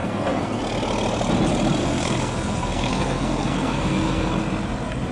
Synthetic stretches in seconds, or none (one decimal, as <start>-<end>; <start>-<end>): 0.0-0.6; 1.8-4.4